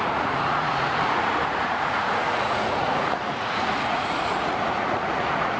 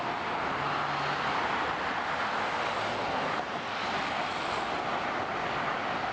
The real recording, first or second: second